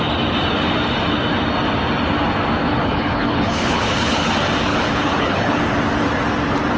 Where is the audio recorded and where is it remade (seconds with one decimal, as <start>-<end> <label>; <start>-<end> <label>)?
0.0-2.7 recorded; 2.7-4.3 remade; 4.3-4.7 recorded; 4.7-5.6 remade; 5.6-6.8 recorded